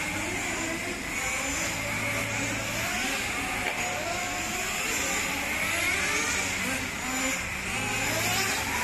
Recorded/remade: recorded